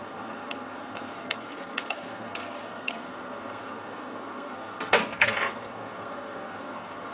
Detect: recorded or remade remade